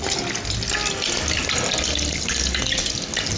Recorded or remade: recorded